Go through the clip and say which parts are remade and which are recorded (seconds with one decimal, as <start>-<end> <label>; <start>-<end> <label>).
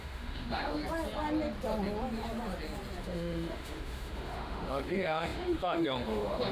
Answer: 0.0-0.8 remade; 0.8-3.0 recorded; 3.0-6.5 remade